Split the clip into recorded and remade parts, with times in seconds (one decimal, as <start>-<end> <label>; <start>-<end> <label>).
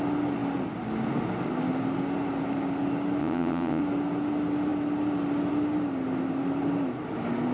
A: 0.0-3.2 recorded; 3.2-3.8 remade; 3.8-7.5 recorded